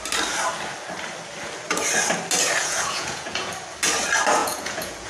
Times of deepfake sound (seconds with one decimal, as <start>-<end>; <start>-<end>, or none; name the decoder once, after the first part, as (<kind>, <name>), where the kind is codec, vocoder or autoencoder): 2.6-3.5 (vocoder, Vocos); 4.4-5.1